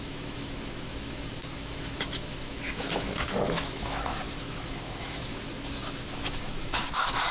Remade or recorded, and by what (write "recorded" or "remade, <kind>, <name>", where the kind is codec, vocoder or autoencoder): remade, autoencoder, DAC-VAE